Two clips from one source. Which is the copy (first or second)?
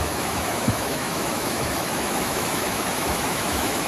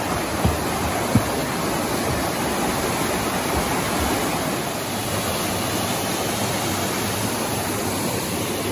first